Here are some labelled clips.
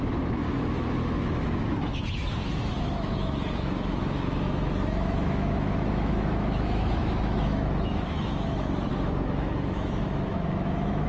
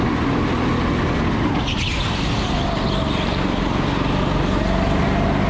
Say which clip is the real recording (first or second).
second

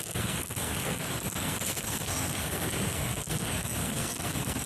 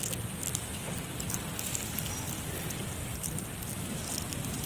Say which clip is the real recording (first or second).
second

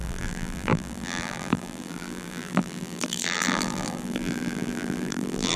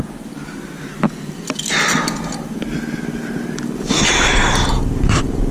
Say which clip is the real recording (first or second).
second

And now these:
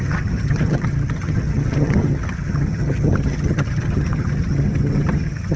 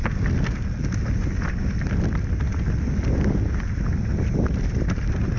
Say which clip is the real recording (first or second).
second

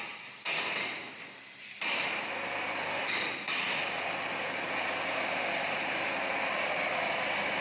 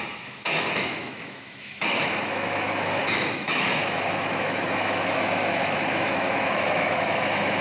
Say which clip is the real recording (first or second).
first